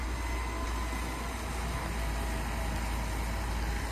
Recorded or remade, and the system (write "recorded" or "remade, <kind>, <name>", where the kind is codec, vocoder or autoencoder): recorded